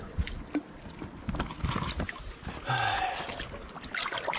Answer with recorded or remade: recorded